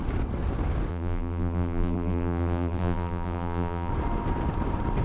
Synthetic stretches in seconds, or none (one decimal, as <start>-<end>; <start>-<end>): 0.9-3.9